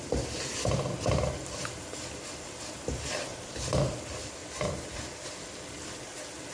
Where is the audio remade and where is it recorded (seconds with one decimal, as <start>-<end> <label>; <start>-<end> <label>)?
0.0-3.3 recorded; 3.3-3.9 remade; 3.9-4.4 recorded; 4.4-5.0 remade; 5.0-6.5 recorded